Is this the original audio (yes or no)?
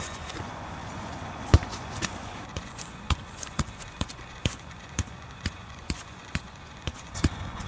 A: no